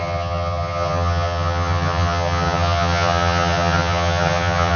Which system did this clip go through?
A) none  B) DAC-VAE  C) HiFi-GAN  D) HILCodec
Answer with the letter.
C